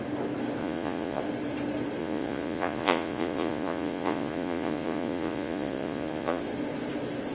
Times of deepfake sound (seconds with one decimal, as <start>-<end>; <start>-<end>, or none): 0.6-1.2; 2.0-6.4